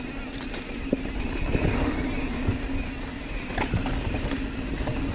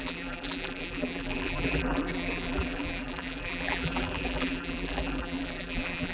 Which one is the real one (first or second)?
first